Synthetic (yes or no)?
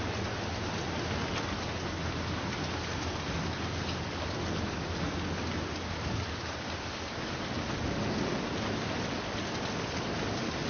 no